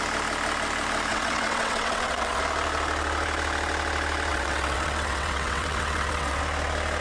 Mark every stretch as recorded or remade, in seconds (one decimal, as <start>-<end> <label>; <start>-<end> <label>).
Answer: 0.0-1.1 recorded; 1.1-2.4 remade; 2.4-4.3 recorded; 4.3-6.4 remade; 6.4-7.0 recorded